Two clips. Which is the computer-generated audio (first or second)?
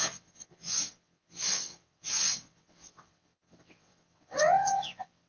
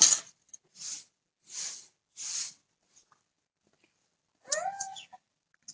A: first